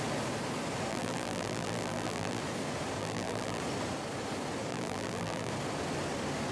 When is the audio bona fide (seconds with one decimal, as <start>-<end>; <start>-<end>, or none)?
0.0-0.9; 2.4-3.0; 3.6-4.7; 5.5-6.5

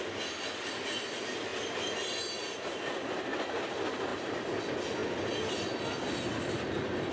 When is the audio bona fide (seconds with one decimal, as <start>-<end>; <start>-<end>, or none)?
0.0-4.1; 4.6-7.1

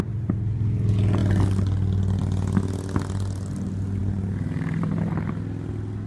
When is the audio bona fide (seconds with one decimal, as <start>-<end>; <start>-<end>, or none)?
0.0-4.0; 5.1-6.1

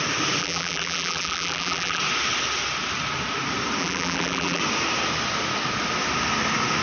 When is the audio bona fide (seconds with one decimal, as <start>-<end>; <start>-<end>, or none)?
0.0-0.4; 2.0-3.8; 4.6-6.8

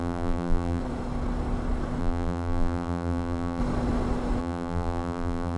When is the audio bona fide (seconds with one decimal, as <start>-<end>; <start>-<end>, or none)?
0.8-2.0; 3.6-4.4

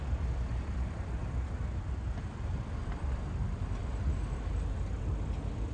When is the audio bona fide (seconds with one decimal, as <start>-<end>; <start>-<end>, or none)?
none